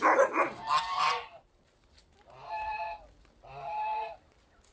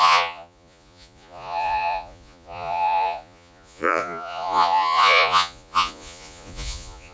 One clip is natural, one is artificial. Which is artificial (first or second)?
second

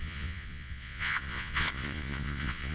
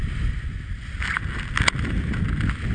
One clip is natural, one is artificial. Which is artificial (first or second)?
first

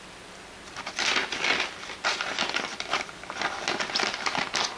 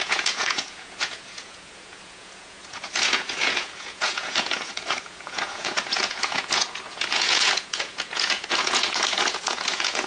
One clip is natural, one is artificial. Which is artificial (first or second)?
second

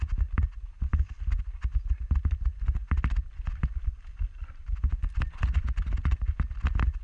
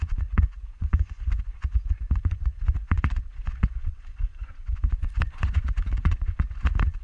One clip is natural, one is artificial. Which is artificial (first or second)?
second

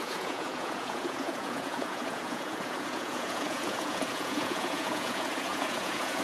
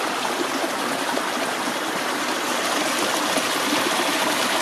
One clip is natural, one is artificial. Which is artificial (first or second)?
first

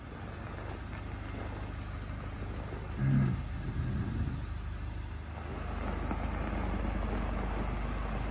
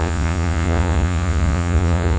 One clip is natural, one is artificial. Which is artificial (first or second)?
second